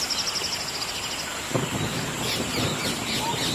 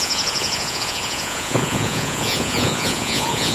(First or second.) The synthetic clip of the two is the second